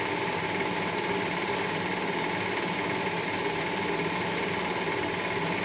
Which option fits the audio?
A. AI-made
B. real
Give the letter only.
B